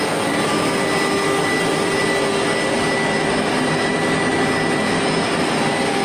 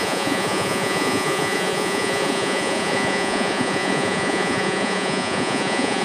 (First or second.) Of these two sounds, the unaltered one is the first